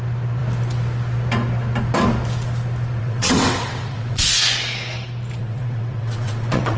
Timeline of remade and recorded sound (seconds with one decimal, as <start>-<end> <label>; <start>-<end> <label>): 0.0-3.0 recorded; 3.0-4.2 remade; 4.2-5.4 recorded; 5.4-6.8 remade